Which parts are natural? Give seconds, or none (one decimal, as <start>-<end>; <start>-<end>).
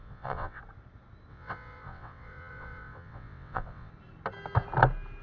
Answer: 0.6-1.3; 3.9-5.2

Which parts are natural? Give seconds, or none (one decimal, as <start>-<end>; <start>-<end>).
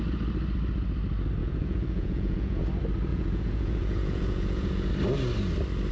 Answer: 0.0-1.4; 2.6-3.1; 4.9-5.9